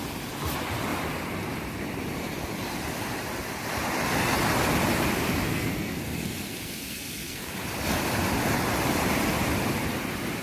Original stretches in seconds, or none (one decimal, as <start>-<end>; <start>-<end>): 0.0-5.5; 7.5-10.4